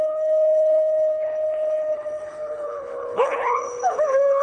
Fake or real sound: fake